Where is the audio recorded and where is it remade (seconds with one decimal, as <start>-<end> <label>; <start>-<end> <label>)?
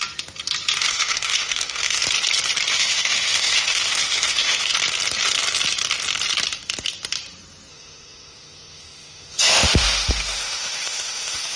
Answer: 0.0-0.8 recorded; 0.8-2.0 remade; 2.0-2.7 recorded; 2.7-4.7 remade; 4.7-7.7 recorded; 7.7-11.6 remade